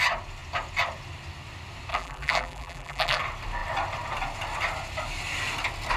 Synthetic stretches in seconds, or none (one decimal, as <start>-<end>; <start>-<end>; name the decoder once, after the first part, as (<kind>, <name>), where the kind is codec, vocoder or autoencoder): 1.9-3.2 (vocoder, BigVGAN v2)